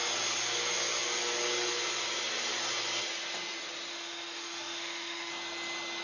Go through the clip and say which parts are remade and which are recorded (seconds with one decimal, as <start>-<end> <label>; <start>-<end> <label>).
0.0-3.9 recorded; 3.9-5.3 remade; 5.3-6.0 recorded